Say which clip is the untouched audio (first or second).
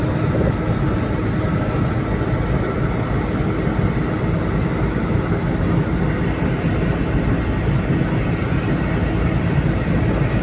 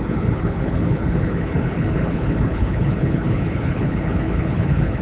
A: first